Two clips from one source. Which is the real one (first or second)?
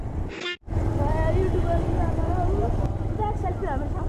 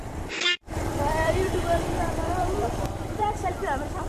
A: first